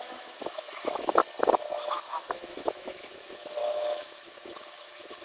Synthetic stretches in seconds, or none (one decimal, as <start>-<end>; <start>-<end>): 0.0-1.2; 1.8-5.2